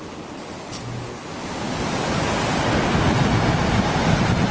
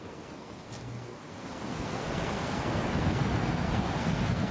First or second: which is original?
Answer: first